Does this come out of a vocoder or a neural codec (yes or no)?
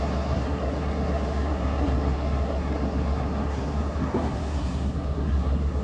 yes